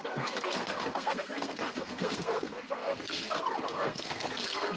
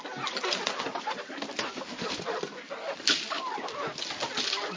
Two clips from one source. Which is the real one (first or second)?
second